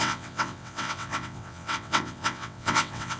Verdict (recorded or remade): remade